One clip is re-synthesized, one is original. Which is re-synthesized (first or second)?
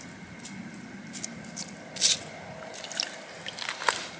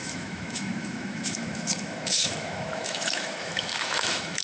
second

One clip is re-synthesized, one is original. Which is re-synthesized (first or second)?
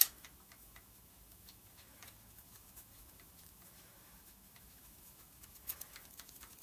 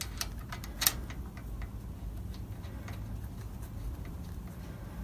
first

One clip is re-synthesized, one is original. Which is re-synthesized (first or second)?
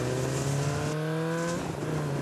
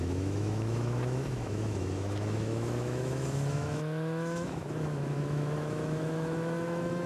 second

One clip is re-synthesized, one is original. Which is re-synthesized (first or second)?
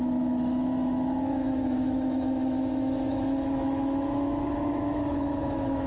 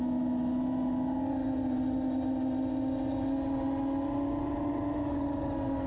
first